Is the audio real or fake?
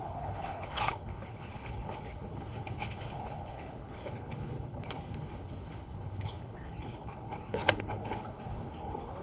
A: fake